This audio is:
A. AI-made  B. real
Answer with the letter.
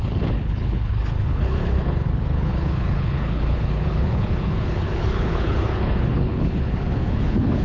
A